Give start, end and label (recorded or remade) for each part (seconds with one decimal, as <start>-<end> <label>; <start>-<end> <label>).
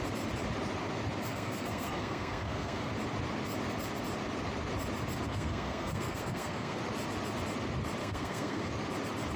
0.0-1.3 recorded; 1.3-2.9 remade; 2.9-5.3 recorded; 5.3-6.8 remade; 6.8-8.0 recorded; 8.0-8.7 remade; 8.7-9.4 recorded